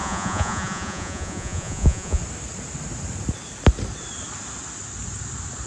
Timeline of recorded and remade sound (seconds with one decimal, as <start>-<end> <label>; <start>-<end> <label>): 0.0-2.2 remade; 2.2-5.7 recorded